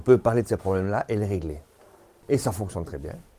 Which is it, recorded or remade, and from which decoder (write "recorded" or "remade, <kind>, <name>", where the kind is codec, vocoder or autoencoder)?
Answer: remade, vocoder, BigVGAN v2